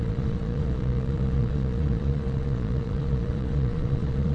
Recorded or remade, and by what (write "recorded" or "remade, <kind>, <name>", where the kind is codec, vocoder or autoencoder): remade, vocoder, Vocos